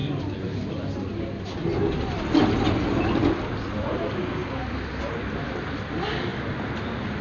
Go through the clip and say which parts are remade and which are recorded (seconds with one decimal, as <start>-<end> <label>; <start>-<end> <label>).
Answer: 0.0-7.2 recorded